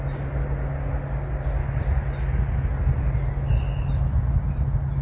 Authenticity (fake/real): real